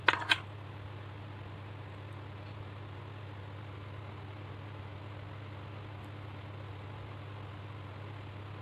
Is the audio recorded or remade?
recorded